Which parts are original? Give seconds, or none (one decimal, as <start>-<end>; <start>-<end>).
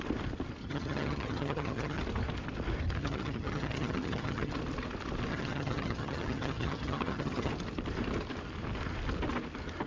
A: 0.0-0.6; 2.0-3.0; 4.5-5.3; 7.5-9.9